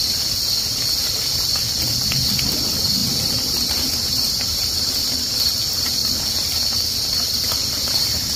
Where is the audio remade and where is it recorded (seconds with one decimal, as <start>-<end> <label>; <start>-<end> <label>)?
0.0-3.0 recorded; 3.0-5.0 remade; 5.0-6.0 recorded; 6.0-6.7 remade; 6.7-8.4 recorded